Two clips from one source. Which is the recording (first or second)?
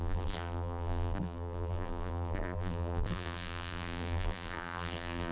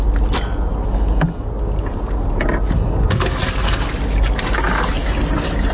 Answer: second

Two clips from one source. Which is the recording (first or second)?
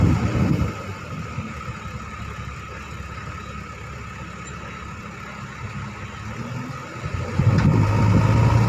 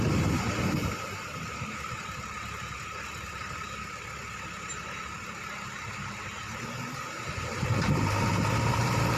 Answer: first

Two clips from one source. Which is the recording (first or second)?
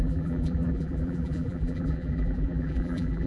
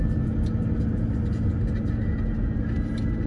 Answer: second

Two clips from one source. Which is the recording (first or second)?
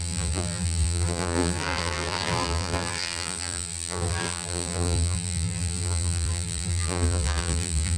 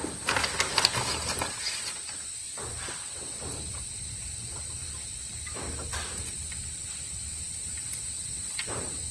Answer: second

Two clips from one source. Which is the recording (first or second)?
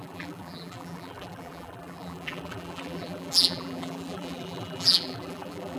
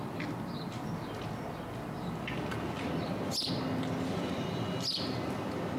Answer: second